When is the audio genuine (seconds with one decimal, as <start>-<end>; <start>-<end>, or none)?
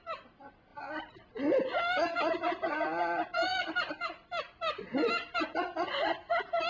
0.0-3.5; 5.1-6.7